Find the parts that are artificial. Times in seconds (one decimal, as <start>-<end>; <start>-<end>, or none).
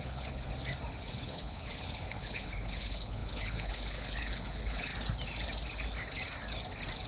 0.0-0.5; 1.1-4.9